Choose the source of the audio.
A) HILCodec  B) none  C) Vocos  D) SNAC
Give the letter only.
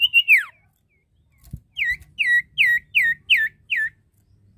B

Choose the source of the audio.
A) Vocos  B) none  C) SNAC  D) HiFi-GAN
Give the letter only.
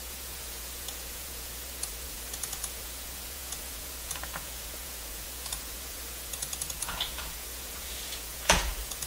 A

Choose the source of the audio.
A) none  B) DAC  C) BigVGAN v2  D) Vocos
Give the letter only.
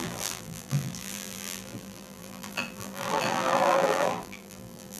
C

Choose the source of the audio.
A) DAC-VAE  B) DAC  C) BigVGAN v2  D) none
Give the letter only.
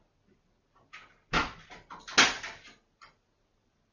D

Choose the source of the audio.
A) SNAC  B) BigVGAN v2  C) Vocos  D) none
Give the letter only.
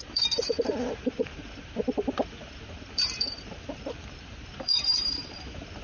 B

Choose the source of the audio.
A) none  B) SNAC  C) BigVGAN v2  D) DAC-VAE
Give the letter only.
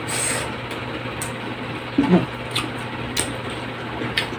A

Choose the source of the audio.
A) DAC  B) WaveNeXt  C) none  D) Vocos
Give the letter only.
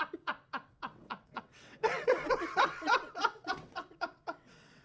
B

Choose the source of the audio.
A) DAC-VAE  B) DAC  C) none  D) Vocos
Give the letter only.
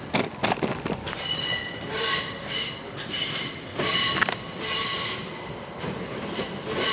C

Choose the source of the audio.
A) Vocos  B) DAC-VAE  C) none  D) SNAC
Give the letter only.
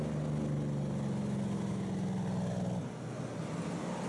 C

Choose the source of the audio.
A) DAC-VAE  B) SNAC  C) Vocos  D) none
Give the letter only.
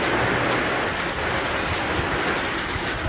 D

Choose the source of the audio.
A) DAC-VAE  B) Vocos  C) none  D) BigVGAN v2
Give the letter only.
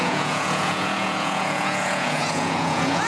B